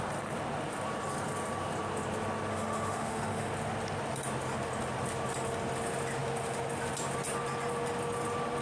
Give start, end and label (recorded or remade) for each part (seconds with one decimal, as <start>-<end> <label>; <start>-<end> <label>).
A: 0.0-2.5 recorded; 2.5-3.5 remade; 3.5-8.6 recorded